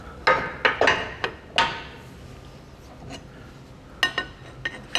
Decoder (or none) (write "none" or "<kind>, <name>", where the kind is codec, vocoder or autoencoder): none